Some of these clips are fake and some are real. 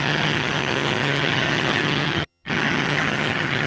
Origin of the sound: fake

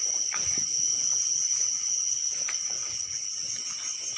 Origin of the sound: real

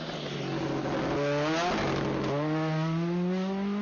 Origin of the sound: real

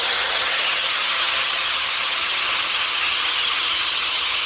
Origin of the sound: fake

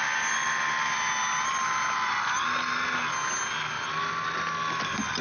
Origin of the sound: real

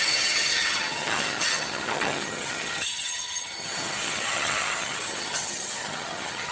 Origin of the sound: fake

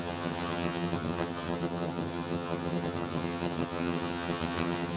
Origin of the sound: fake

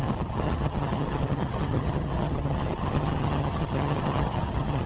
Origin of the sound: fake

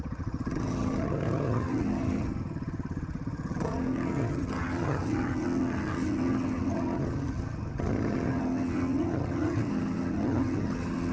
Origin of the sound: fake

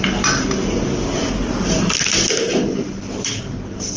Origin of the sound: real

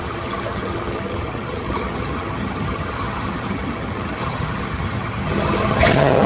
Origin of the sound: fake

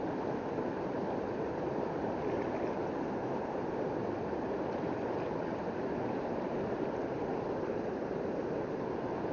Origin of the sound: real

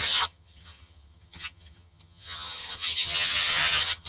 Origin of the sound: fake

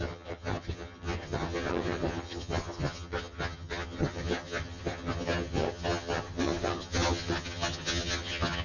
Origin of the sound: fake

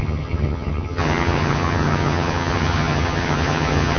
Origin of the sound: fake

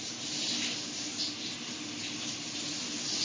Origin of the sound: real